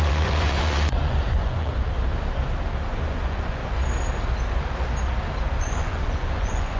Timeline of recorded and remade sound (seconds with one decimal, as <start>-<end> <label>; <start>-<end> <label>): 0.0-1.7 remade; 1.7-2.9 recorded; 2.9-3.6 remade; 3.6-5.6 recorded; 5.6-6.8 remade